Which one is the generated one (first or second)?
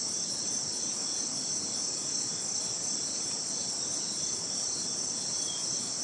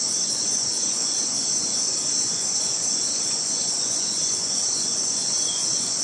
second